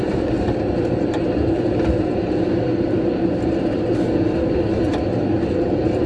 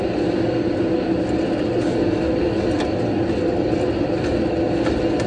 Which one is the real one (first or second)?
second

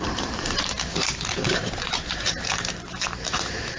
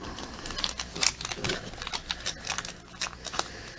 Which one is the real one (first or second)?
second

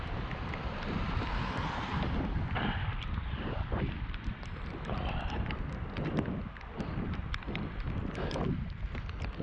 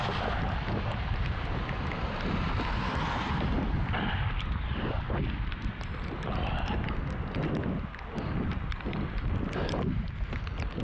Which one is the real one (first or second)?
second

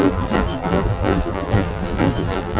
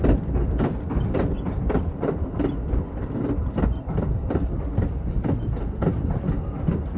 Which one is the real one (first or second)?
second